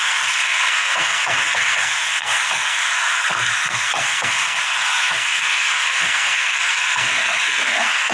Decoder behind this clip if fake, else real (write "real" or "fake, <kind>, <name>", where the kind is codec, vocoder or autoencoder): fake, codec, SNAC